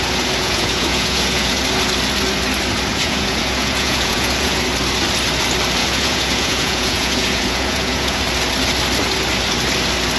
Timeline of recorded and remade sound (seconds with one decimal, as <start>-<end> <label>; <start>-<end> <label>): 0.0-0.4 recorded; 0.4-1.6 remade; 1.6-2.9 recorded; 2.9-4.6 remade; 4.6-5.8 recorded; 5.8-8.2 remade; 8.2-10.2 recorded